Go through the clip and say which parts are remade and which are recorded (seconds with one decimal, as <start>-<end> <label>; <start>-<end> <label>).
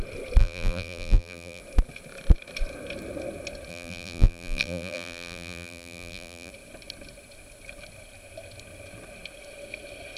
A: 0.0-0.4 recorded; 0.4-1.6 remade; 1.6-3.7 recorded; 3.7-6.5 remade; 6.5-10.2 recorded